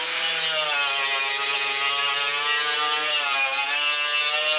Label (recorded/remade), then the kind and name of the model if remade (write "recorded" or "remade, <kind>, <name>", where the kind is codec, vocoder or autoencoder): recorded